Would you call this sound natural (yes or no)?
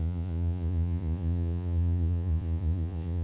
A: no